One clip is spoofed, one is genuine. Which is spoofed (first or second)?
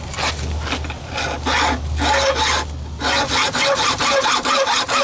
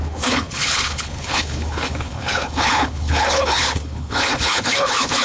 second